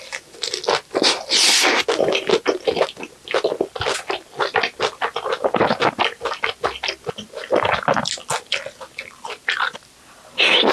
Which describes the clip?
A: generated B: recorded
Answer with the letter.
B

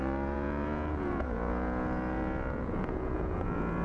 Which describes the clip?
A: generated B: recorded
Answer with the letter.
A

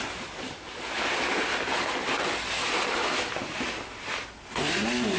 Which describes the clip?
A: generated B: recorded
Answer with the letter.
B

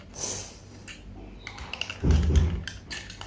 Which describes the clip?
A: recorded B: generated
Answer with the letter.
A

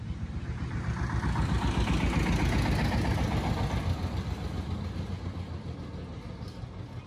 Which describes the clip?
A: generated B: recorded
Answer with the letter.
B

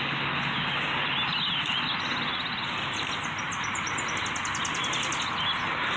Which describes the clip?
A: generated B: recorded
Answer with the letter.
B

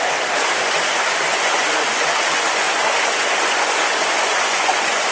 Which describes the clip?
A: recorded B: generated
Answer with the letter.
B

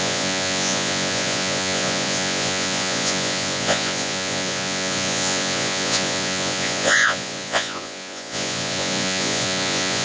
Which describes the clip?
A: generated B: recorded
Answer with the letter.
A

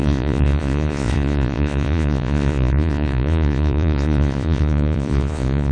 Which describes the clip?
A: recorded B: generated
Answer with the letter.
B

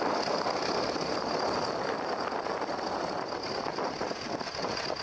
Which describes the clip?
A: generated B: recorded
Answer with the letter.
B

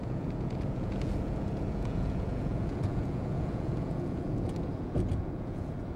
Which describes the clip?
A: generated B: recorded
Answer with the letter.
A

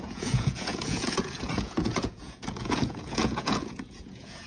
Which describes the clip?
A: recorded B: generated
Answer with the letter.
B